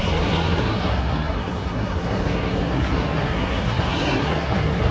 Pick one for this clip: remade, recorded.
remade